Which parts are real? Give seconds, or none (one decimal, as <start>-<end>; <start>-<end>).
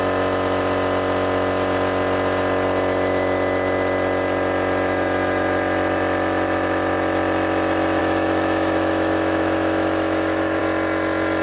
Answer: 0.0-8.0; 10.6-11.4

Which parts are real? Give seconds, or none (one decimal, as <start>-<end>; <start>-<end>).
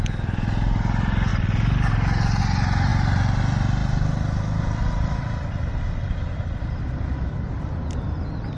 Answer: 0.0-8.6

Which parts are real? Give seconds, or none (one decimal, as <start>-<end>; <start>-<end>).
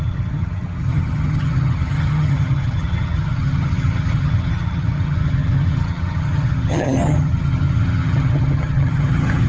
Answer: none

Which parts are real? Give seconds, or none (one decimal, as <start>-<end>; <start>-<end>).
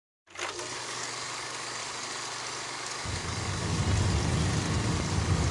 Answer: 0.0-0.8; 1.8-2.7; 3.8-5.5